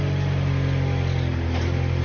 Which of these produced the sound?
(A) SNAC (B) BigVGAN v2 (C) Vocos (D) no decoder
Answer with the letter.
D